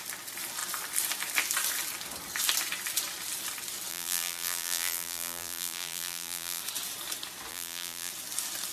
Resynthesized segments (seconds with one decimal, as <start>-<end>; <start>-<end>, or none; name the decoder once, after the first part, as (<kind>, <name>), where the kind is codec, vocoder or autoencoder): 3.9-6.6 (vocoder, BigVGAN v2); 7.5-8.1